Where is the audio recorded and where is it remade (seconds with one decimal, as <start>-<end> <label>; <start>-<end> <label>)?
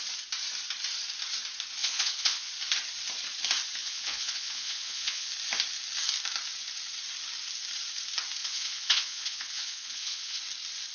0.0-1.8 recorded; 1.8-2.5 remade; 2.5-3.8 recorded; 3.8-5.3 remade; 5.3-8.4 recorded; 8.4-10.4 remade; 10.4-10.9 recorded